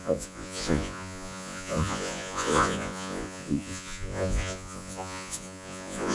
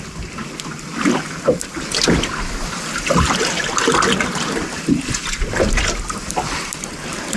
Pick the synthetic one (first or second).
first